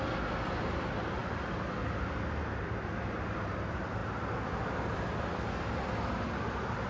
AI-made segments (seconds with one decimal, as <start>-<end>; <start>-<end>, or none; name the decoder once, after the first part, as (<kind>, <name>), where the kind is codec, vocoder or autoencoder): none